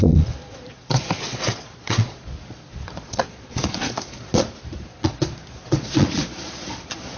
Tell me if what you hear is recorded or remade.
remade